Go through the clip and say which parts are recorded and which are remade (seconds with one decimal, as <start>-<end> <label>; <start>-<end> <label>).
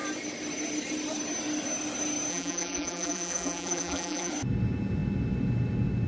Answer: 0.0-2.3 recorded; 2.3-4.3 remade; 4.3-6.1 recorded